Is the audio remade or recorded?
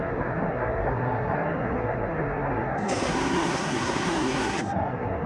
remade